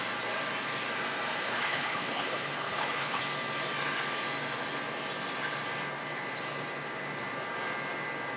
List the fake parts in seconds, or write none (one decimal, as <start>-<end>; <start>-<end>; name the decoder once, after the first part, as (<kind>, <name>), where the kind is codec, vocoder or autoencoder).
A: 1.4-3.2 (codec, HILCodec)